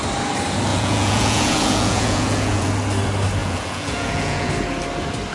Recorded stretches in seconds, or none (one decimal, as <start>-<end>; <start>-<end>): 0.0-0.7; 2.7-3.4; 4.5-5.3